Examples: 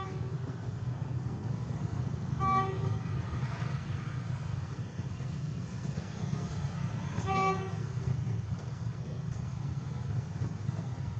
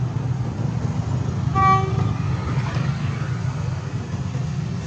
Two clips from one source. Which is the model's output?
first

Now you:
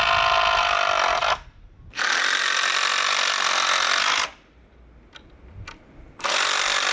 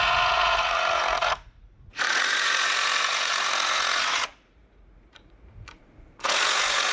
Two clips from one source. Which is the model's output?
second